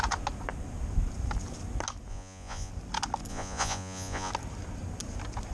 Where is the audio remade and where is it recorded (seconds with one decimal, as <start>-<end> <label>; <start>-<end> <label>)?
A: 0.0-2.1 recorded; 2.1-2.7 remade; 2.7-3.3 recorded; 3.3-4.3 remade; 4.3-5.5 recorded